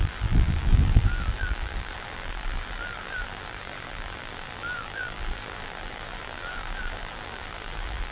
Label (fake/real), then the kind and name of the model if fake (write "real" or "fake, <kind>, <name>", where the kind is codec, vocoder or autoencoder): fake, vocoder, BigVGAN v2